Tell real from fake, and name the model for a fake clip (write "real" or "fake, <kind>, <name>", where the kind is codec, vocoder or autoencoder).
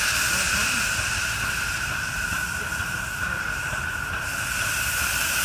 real